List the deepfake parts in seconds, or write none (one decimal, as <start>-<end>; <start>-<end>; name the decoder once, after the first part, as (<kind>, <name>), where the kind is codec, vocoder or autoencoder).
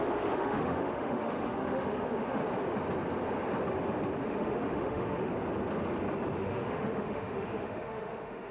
0.0-2.4 (autoencoder, DAC-VAE); 4.2-5.3; 6.4-8.5